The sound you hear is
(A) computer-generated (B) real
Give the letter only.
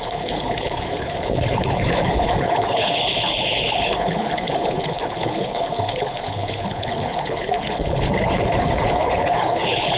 A